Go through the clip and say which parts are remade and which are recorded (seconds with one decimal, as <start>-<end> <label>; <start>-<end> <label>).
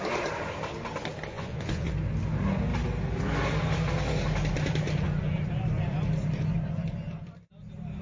0.0-1.3 recorded; 1.3-1.9 remade; 1.9-8.0 recorded